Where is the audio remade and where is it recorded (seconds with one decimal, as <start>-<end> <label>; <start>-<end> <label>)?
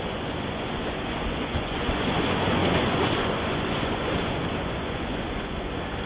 0.0-6.1 remade